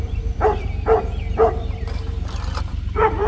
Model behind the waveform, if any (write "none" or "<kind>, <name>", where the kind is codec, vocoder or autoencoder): none